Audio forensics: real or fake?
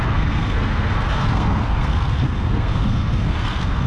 fake